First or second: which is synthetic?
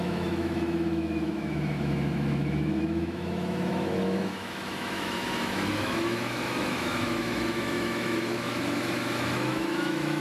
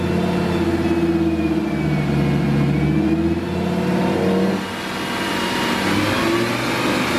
first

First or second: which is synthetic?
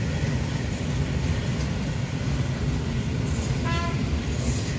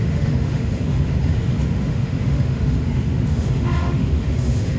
second